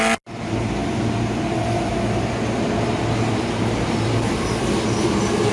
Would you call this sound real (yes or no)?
yes